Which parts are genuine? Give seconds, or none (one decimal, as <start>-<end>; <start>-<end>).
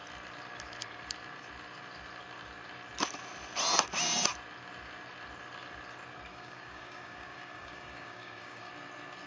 0.0-6.3; 8.7-9.3